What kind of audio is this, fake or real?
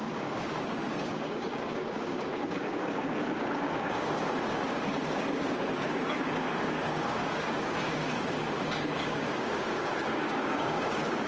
fake